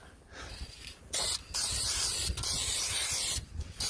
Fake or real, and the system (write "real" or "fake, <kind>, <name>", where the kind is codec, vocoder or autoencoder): real